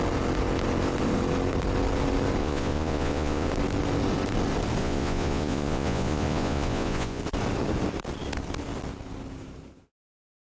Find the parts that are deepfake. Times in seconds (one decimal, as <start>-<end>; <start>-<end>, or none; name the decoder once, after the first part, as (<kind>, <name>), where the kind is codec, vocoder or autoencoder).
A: 2.4-3.5 (vocoder, Vocos); 4.8-7.2